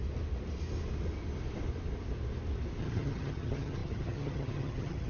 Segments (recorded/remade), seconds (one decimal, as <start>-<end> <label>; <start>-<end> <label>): 0.0-2.8 recorded; 2.8-5.1 remade